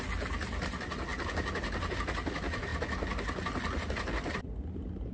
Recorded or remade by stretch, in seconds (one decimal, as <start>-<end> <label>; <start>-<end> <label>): 0.0-5.1 recorded